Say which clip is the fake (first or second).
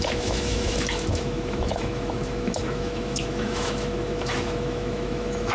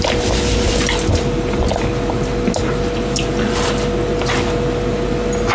first